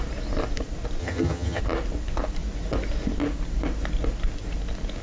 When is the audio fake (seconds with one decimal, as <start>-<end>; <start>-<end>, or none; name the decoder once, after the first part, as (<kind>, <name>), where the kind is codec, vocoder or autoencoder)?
1.0-1.6 (vocoder, HiFi-GAN)